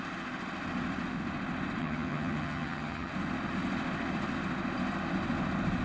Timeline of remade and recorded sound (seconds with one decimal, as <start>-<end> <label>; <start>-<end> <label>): 0.0-1.8 recorded; 1.8-3.1 remade; 3.1-5.8 recorded